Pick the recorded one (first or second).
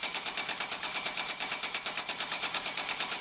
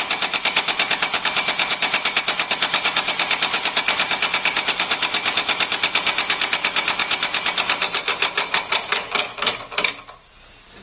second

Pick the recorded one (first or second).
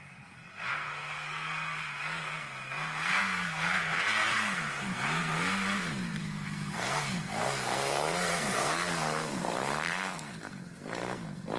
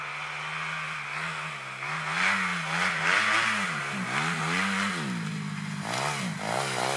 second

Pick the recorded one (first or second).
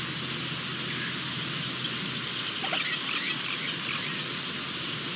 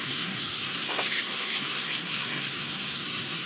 first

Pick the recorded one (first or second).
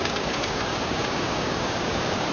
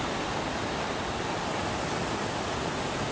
second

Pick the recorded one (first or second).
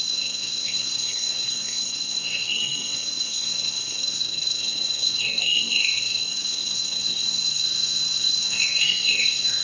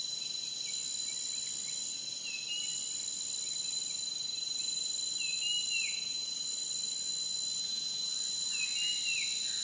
second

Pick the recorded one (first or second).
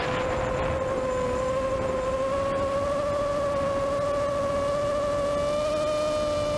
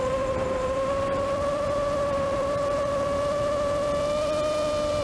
first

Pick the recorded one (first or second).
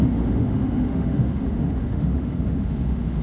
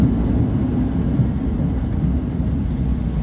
second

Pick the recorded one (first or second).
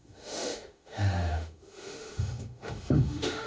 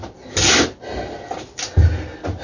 second